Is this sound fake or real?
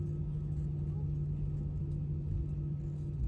real